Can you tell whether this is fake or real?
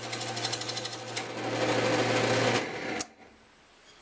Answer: real